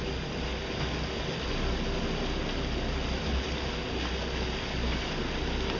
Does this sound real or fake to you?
real